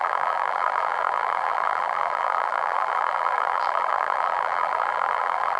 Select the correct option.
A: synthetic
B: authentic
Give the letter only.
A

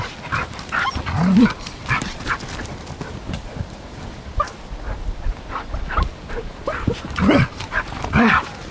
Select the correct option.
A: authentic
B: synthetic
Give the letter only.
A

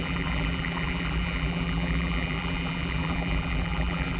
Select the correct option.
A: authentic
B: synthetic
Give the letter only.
B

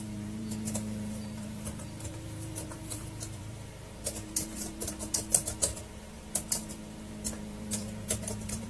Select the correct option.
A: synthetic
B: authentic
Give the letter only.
A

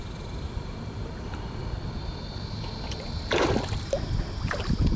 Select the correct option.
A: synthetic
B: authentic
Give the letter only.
A